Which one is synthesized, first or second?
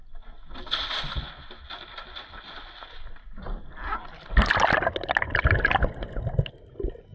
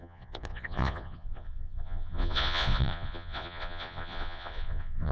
second